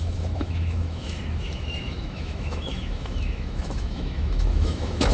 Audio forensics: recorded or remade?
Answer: remade